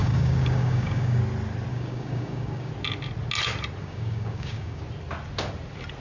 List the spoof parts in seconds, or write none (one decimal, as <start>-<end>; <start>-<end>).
0.0-1.2; 1.7-2.7; 3.8-4.8